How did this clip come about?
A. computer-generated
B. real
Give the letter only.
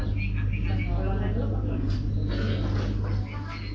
B